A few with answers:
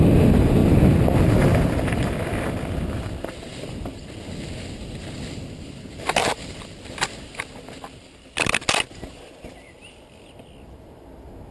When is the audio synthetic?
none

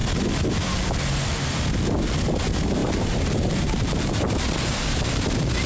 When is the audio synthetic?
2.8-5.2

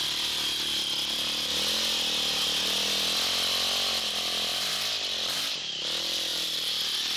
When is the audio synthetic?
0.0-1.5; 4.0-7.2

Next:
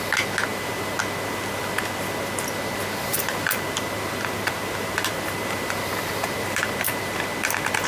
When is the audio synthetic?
0.5-1.0; 3.1-7.1

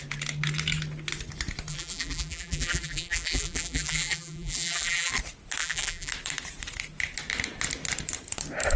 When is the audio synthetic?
1.7-5.1; 5.6-6.1